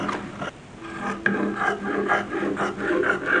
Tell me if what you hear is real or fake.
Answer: real